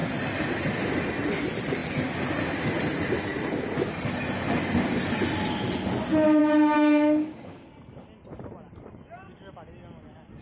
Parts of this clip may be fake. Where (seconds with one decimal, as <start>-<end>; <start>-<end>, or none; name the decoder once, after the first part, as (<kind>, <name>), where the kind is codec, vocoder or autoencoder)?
6.4-7.7 (codec, DAC)